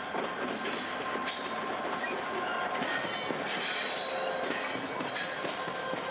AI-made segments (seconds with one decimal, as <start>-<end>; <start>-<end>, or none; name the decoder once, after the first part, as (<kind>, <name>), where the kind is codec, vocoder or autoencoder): none